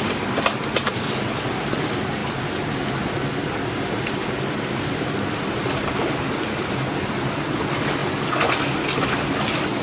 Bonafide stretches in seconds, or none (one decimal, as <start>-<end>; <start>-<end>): 0.0-9.8